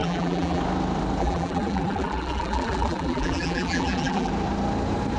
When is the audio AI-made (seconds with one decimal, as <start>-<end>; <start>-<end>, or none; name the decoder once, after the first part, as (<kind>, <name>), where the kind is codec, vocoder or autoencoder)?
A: 0.0-0.6 (vocoder, BigVGAN v2); 1.2-4.3